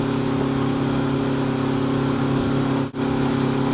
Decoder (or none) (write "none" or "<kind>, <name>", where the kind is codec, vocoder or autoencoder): none